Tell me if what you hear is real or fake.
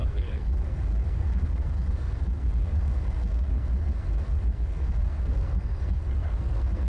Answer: fake